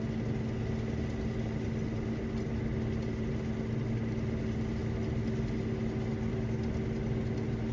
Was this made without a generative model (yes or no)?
yes